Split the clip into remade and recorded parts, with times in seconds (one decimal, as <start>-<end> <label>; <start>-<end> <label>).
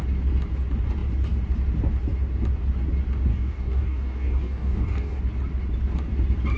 0.0-3.3 recorded; 3.3-5.2 remade; 5.2-6.6 recorded